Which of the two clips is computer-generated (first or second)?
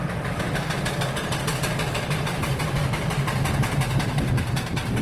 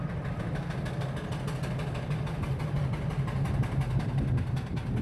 first